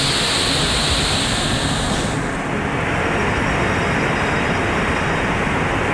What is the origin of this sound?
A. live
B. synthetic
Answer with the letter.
A